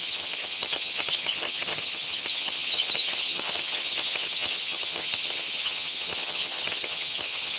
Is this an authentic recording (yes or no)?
no